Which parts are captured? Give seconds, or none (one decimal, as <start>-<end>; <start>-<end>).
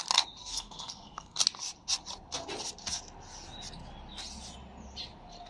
0.0-0.4; 1.4-5.5